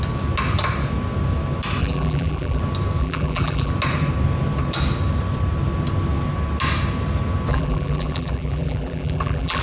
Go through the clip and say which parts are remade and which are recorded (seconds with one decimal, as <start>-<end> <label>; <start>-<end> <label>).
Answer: 0.0-1.8 recorded; 1.8-2.6 remade; 2.6-3.0 recorded; 3.0-3.7 remade; 3.7-7.5 recorded; 7.5-9.6 remade